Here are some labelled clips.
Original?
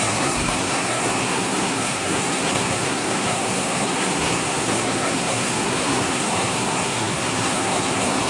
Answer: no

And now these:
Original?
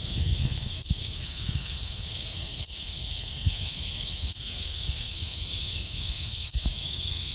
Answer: no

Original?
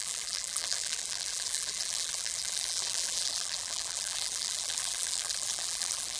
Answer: no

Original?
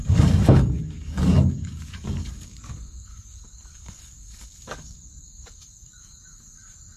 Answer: no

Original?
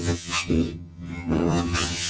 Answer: no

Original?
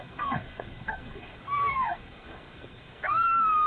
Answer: no